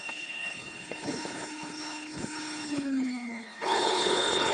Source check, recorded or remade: remade